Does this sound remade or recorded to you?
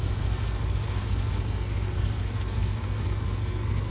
remade